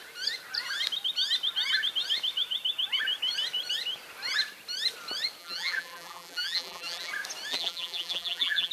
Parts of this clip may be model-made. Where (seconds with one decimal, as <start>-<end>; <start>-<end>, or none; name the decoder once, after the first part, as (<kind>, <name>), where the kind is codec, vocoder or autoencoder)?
5.4-7.1 (vocoder, BigVGAN v2); 7.5-8.7

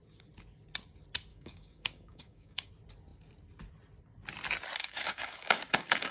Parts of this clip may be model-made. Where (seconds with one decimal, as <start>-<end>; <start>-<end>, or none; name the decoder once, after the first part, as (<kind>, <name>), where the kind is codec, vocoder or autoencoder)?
1.3-2.7 (codec, DAC); 4.8-6.1

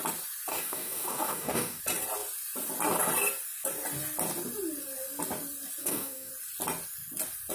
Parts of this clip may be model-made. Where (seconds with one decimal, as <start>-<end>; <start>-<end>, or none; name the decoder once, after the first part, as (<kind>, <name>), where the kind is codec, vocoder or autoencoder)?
0.5-1.8 (codec, DAC); 5.8-6.3

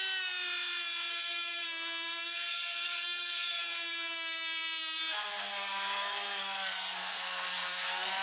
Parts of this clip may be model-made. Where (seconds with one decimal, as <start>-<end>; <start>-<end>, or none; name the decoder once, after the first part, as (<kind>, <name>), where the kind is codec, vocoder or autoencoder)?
1.1-8.2 (codec, SNAC)

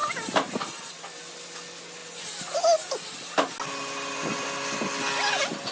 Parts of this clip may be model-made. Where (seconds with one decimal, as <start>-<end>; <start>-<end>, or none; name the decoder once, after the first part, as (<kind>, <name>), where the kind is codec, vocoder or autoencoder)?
none

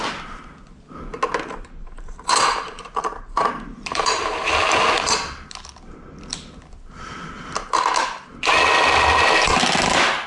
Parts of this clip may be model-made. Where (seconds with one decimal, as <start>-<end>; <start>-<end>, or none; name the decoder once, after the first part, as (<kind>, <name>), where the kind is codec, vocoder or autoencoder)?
1.8-4.5 (vocoder, BigVGAN v2)

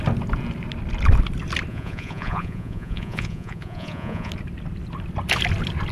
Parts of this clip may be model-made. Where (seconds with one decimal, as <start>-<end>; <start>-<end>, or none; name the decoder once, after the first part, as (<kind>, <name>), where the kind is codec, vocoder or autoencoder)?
1.7-4.3 (vocoder, Vocos)

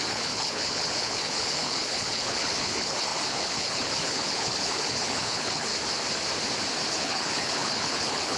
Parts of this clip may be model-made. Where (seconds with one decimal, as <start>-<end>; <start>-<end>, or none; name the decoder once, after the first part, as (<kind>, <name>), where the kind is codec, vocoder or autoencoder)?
0.0-5.7 (codec, HILCodec); 6.9-8.4